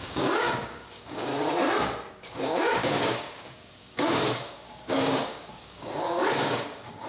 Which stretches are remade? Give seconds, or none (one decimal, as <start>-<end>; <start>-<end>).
0.0-1.3; 2.1-7.1